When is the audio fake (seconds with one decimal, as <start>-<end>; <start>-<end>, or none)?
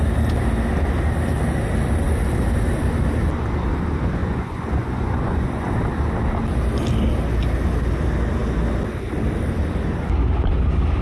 4.2-5.7